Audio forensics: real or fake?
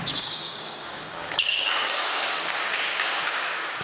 fake